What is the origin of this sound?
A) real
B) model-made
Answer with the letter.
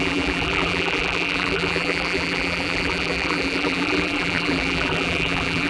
B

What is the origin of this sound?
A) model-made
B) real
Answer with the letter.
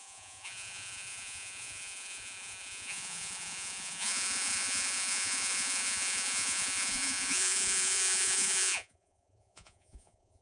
A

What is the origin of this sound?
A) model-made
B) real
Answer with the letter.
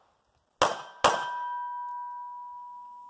B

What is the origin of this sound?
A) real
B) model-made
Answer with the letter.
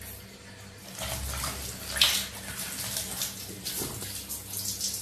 A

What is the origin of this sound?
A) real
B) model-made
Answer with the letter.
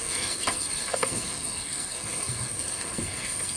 B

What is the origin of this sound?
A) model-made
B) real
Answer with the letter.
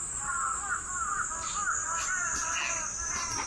B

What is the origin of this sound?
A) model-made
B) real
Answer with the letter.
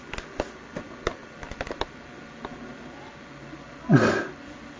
B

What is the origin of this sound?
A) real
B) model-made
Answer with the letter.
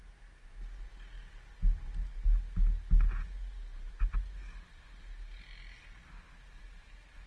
A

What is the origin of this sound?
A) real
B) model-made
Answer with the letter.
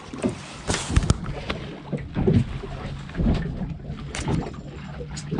A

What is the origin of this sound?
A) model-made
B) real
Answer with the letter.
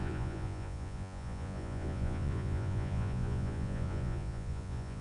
A